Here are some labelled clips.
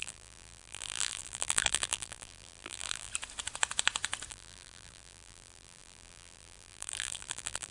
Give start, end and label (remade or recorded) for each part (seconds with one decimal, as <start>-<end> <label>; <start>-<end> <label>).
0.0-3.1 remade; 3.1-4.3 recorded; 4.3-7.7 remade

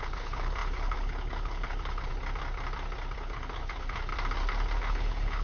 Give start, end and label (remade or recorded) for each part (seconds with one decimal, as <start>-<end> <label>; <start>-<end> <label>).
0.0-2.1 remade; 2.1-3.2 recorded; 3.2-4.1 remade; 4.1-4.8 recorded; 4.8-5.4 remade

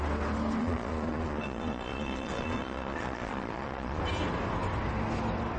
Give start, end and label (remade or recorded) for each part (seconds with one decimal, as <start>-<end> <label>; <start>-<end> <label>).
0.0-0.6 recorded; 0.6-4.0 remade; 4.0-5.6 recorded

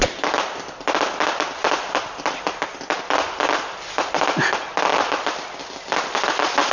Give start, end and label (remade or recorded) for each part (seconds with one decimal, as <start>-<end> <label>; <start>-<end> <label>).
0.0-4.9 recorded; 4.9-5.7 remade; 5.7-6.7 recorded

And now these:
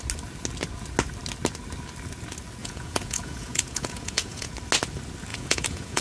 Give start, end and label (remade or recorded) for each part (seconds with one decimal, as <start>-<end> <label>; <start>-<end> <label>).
0.0-2.6 recorded; 2.6-4.5 remade; 4.5-5.3 recorded; 5.3-6.0 remade